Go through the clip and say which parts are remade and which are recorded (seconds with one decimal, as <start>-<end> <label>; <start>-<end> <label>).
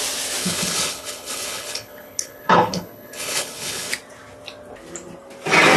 0.0-0.4 recorded; 0.4-3.9 remade; 3.9-5.8 recorded